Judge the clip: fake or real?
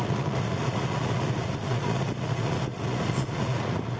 fake